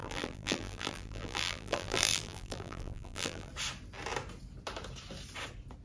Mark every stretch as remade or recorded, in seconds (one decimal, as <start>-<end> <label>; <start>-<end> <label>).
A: 0.0-3.5 remade; 3.5-5.8 recorded